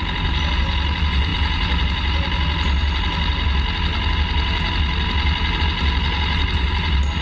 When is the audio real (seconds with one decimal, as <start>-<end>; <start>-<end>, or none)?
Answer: 0.0-7.2